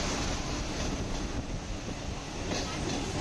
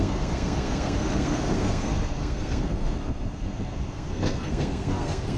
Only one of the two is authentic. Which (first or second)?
first